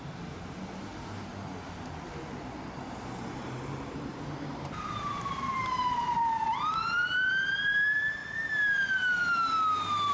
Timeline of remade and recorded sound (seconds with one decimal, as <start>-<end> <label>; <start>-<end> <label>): 0.0-1.3 remade; 1.3-2.8 recorded; 2.8-8.2 remade; 8.2-10.1 recorded